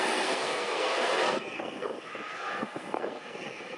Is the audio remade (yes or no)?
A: yes